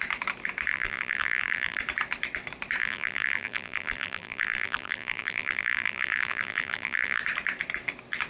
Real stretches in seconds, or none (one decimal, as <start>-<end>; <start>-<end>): 0.0-0.7; 1.8-2.8; 7.2-8.3